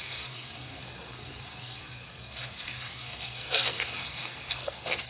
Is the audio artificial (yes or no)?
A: yes